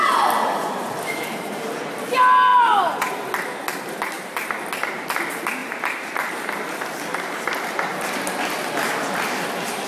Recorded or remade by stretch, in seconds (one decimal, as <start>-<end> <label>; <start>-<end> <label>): 0.0-2.5 recorded; 2.5-3.1 remade; 3.1-5.6 recorded; 5.6-7.7 remade; 7.7-9.9 recorded